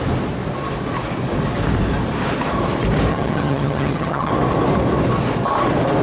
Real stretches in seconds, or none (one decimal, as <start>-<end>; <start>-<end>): 0.0-3.1; 4.3-6.0